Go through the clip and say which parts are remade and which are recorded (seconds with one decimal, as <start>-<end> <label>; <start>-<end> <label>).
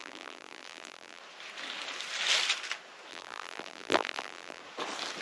0.0-1.2 remade; 1.2-3.1 recorded; 3.1-4.6 remade; 4.6-5.2 recorded